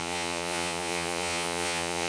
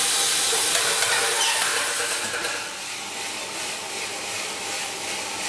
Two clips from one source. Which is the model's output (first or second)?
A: first